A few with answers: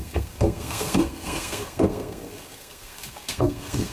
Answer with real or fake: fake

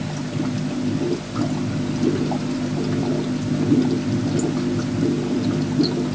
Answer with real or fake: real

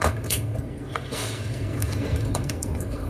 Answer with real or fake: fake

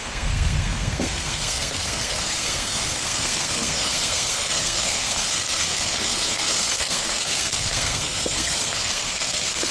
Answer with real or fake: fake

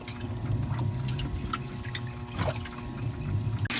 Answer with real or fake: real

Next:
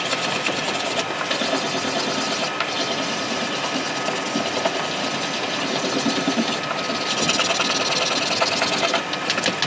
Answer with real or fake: real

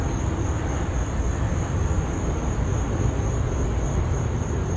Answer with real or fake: real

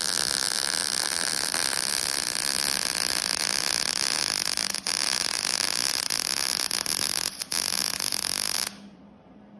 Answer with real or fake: real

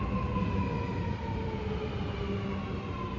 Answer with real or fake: real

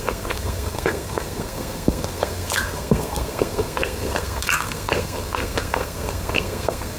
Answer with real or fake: fake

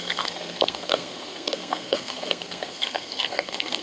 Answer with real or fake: fake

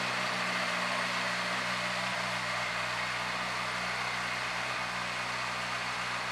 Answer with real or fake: real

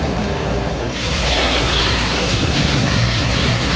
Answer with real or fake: fake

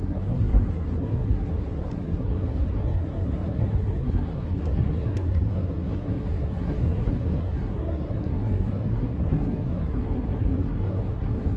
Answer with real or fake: fake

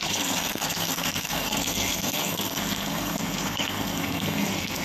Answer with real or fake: fake